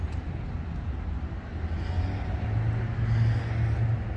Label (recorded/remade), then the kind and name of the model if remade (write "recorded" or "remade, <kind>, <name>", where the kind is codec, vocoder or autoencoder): recorded